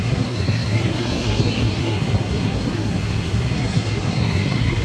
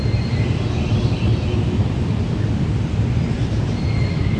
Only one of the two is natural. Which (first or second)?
second